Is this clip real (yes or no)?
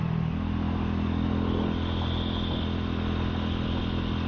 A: yes